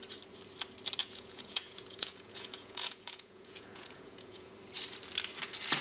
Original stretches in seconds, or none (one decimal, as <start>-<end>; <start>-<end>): 0.0-1.0; 4.5-5.8